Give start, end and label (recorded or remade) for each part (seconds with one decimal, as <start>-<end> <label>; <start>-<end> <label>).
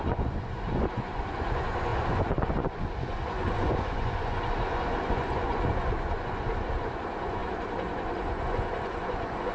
0.0-9.5 remade